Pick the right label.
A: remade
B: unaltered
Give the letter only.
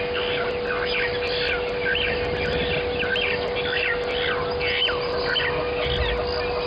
B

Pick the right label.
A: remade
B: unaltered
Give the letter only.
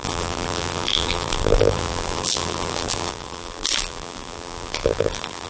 A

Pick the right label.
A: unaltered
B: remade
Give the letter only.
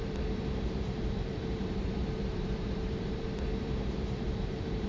B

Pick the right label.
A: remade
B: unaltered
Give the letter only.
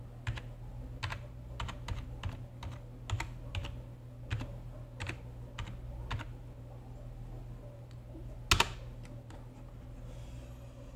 B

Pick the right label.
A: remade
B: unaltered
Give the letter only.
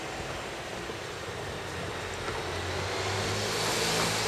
B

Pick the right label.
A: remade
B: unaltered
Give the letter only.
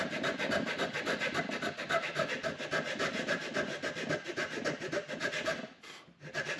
A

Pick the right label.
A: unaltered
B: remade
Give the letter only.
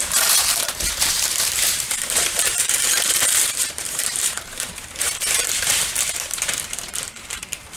B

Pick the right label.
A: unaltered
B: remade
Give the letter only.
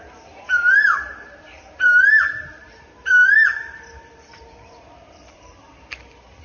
B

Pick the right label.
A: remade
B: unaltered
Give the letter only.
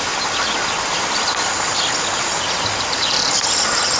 B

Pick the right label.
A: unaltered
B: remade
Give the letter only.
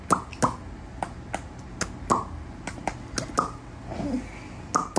A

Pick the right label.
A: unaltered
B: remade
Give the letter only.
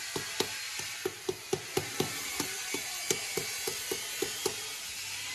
A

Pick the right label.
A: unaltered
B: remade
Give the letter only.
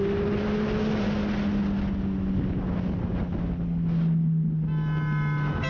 A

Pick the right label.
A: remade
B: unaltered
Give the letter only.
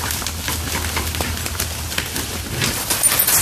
A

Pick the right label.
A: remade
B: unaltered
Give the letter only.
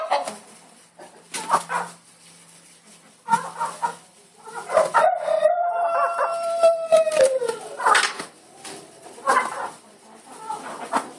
A